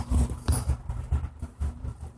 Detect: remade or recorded remade